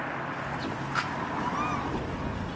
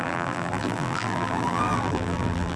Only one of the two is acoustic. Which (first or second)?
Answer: first